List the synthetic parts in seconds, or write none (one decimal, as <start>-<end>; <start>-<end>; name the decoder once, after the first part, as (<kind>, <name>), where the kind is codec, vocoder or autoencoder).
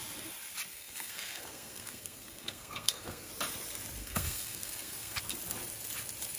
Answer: 0.7-3.3 (codec, SNAC); 4.0-5.2